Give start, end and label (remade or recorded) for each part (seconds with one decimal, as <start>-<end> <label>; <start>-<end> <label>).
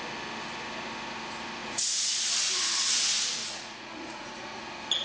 0.0-1.6 recorded; 1.6-2.1 remade; 2.1-3.4 recorded; 3.4-4.6 remade; 4.6-5.0 recorded